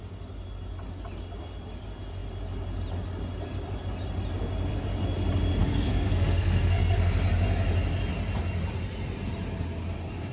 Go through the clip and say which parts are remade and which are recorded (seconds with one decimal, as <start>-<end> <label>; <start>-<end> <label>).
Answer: 0.0-5.6 recorded; 5.6-7.2 remade; 7.2-10.3 recorded